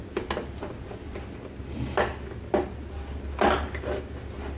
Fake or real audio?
real